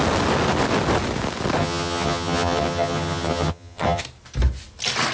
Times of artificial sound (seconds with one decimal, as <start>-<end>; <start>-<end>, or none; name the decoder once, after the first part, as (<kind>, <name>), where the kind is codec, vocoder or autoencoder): 1.6-4.0 (vocoder, HiFi-GAN)